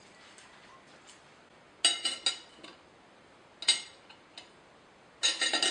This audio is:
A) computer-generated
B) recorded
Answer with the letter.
B